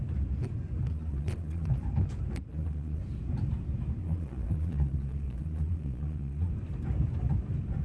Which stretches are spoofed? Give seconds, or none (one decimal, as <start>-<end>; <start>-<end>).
0.9-1.7; 2.5-3.0; 4.0-6.5